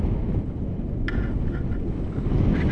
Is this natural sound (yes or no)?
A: yes